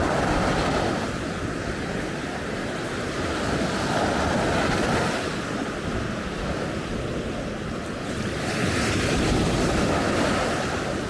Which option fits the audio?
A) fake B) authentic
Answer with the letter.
B